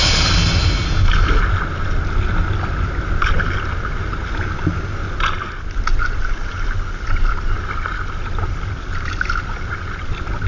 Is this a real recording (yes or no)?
yes